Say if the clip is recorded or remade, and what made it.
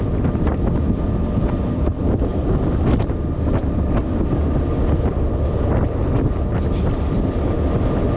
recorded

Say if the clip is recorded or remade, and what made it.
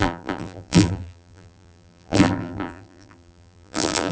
remade, vocoder, BigVGAN v2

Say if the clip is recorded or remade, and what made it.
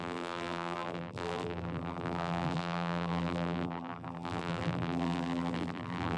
remade, vocoder, BigVGAN v2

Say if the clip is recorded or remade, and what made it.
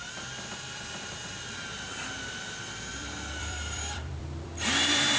remade, vocoder, BigVGAN v2